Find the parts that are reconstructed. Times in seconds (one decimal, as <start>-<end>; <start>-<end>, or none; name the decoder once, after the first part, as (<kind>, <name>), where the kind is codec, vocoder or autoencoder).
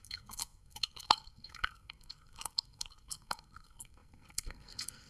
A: 0.0-5.1 (codec, SNAC)